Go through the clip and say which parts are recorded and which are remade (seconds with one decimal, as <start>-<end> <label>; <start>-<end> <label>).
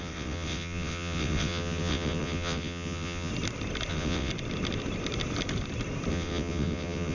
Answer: 0.0-3.3 remade; 3.3-3.9 recorded; 3.9-4.3 remade; 4.3-6.1 recorded; 6.1-7.1 remade